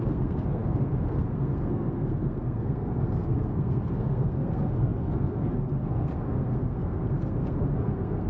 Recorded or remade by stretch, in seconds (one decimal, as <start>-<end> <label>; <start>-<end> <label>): 0.0-8.3 remade